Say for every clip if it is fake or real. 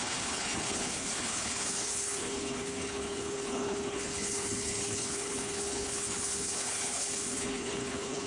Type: fake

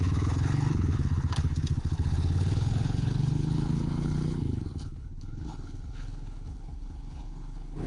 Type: fake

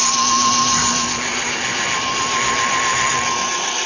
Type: real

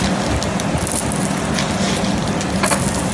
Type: real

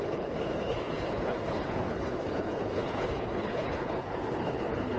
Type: fake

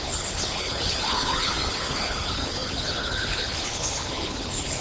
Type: fake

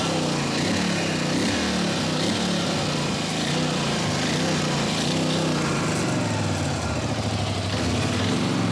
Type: real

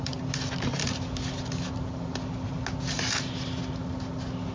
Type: real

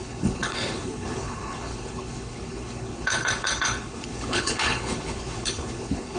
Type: fake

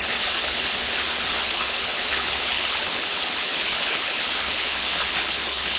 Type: fake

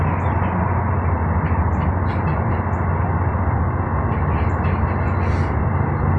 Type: real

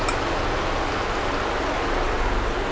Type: real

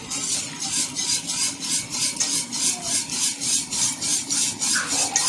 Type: real